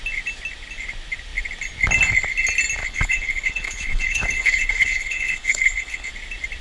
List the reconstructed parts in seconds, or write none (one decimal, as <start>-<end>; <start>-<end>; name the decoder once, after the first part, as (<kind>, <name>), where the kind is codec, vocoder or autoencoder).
2.8-6.1 (codec, HILCodec)